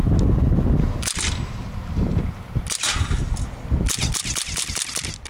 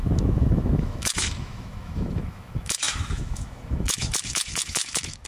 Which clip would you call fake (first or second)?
second